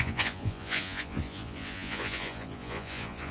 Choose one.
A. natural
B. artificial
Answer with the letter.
B